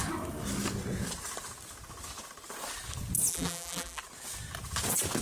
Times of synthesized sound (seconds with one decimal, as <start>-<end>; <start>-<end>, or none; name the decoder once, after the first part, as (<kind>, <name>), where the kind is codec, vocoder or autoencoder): 3.3-4.0 (vocoder, BigVGAN v2)